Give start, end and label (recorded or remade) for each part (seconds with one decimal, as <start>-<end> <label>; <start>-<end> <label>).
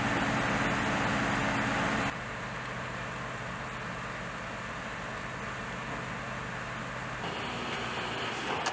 0.0-8.7 recorded